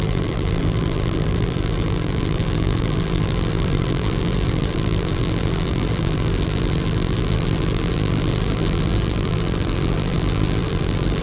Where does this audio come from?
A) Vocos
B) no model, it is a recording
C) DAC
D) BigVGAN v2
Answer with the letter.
D